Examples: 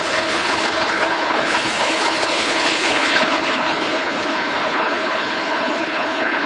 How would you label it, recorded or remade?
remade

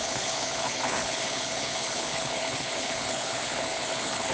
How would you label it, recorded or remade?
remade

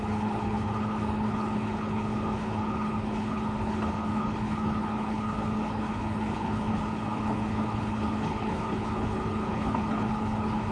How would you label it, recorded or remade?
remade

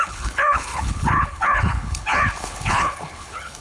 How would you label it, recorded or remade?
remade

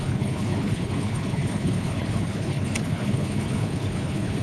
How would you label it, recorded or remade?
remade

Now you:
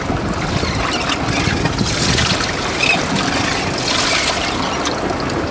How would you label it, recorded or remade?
recorded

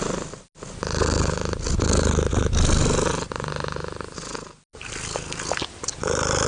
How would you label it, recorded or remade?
recorded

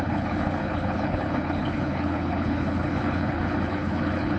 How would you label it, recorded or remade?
remade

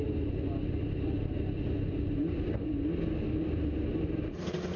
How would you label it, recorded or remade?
recorded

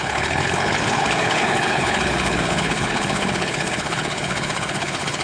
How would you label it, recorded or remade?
remade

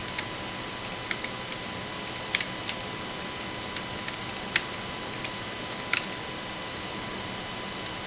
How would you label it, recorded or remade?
recorded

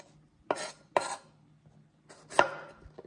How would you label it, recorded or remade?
recorded